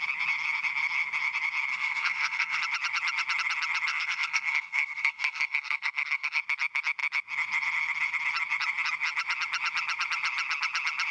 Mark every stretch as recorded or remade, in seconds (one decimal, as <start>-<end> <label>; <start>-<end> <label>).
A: 0.0-1.7 recorded; 1.7-2.6 remade; 2.6-3.9 recorded; 3.9-6.4 remade; 6.4-11.1 recorded